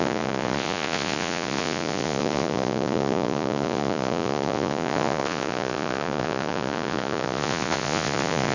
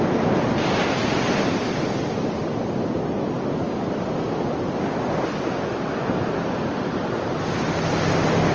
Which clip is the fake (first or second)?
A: first